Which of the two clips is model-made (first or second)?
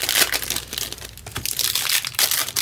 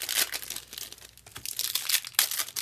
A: first